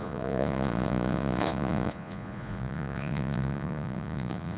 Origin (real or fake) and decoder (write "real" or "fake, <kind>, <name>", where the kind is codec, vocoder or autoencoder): fake, vocoder, Vocos